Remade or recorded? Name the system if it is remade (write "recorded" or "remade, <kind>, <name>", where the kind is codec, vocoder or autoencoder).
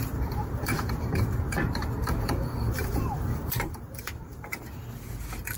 remade, vocoder, BigVGAN v2